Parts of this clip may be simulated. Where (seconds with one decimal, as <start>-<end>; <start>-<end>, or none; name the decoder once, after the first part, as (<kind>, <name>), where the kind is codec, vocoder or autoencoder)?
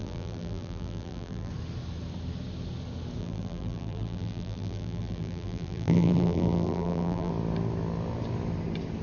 0.0-1.5 (vocoder, BigVGAN v2); 3.2-7.3